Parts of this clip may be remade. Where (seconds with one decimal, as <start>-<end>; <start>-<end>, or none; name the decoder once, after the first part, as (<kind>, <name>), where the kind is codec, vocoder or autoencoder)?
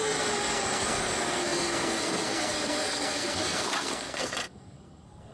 0.0-5.3 (codec, SNAC)